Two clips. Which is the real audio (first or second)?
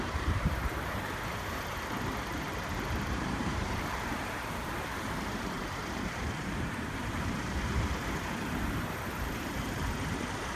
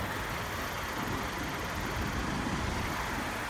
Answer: second